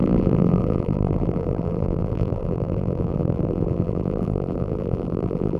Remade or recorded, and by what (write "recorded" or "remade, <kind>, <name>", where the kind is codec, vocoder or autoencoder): remade, vocoder, BigVGAN v2